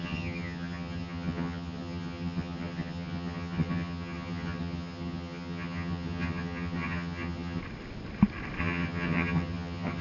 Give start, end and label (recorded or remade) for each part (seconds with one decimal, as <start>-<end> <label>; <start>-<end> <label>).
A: 0.0-7.6 remade; 7.6-8.6 recorded; 8.6-10.0 remade